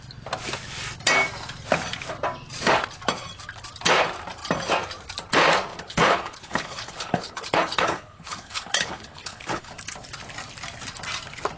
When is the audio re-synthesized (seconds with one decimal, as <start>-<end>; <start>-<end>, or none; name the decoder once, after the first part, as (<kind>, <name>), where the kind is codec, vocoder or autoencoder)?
5.7-9.7 (codec, HILCodec)